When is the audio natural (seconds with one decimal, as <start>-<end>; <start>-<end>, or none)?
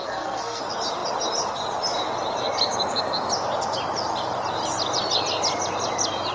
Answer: 0.6-6.3